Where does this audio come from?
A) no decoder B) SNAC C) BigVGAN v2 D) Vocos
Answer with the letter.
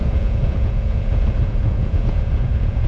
D